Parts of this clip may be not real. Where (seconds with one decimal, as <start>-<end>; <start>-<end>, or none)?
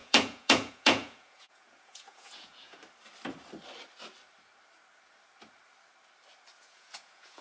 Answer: 0.0-2.8; 6.6-7.4